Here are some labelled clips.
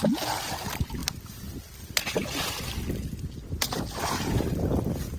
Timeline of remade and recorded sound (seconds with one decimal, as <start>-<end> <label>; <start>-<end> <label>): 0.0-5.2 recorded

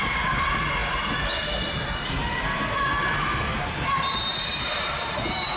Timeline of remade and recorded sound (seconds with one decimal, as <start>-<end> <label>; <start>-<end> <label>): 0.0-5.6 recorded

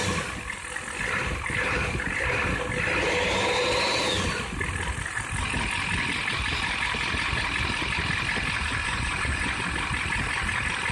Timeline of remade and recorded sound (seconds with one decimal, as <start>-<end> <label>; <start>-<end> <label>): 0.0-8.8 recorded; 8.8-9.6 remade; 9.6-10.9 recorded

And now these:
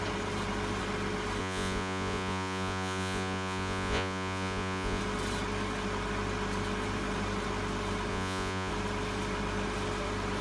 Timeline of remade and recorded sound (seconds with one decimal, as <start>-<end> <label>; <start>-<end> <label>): 0.0-1.4 recorded; 1.4-5.0 remade; 5.0-8.1 recorded; 8.1-8.7 remade; 8.7-10.4 recorded

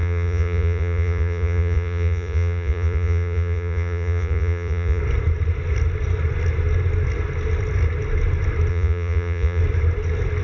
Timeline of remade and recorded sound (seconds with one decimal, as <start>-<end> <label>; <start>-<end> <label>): 0.0-5.0 remade; 5.0-8.7 recorded; 8.7-9.6 remade; 9.6-10.4 recorded

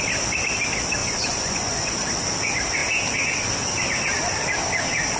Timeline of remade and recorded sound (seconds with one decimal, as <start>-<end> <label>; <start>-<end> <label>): 0.0-1.0 recorded; 1.0-1.9 remade; 1.9-5.2 recorded